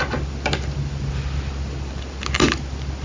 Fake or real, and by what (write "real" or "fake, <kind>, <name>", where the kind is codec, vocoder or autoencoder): real